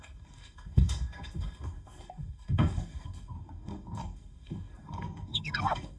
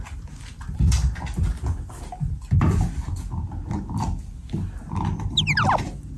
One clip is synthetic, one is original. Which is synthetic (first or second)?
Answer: first